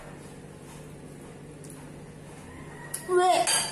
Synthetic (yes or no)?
no